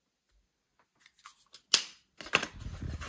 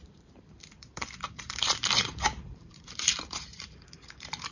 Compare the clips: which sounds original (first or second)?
first